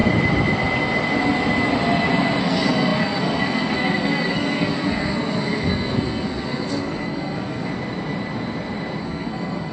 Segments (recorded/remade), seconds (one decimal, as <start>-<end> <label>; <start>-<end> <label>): 0.0-2.4 recorded; 2.4-7.7 remade; 7.7-9.0 recorded; 9.0-9.7 remade